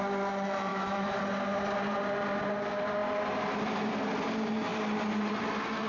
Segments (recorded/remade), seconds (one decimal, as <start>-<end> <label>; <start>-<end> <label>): 0.0-0.7 recorded; 0.7-1.2 remade; 1.2-5.9 recorded